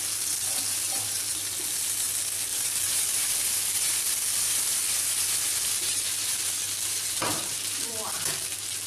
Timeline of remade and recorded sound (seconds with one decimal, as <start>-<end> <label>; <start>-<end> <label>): 0.0-2.5 recorded; 2.5-3.0 remade; 3.0-6.6 recorded; 6.6-7.9 remade; 7.9-8.9 recorded